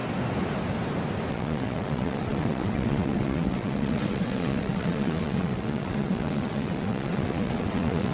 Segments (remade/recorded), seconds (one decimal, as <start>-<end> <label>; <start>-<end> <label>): 0.0-1.3 recorded; 1.3-8.1 remade